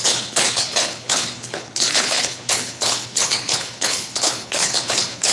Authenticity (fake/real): fake